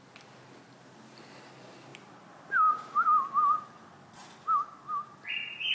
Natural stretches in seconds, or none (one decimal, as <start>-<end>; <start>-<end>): 0.0-5.7